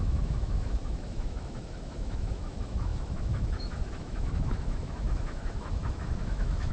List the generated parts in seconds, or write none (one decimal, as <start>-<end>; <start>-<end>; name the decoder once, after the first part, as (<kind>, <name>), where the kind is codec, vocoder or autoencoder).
0.0-6.7 (autoencoder, DAC-VAE)